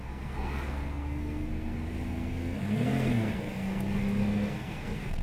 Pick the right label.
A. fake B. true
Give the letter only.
A